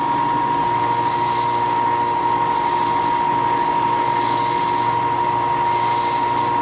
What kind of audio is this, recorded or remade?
recorded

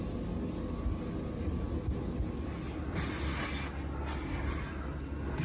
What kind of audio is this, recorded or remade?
recorded